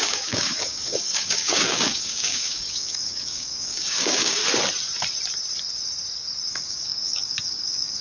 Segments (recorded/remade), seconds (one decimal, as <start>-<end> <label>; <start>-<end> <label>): 0.0-4.4 remade; 4.4-6.5 recorded; 6.5-8.0 remade